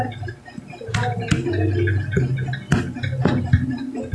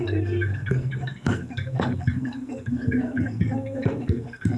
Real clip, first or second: first